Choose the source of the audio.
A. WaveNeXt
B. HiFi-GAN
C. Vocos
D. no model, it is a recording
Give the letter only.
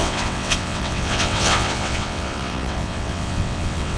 A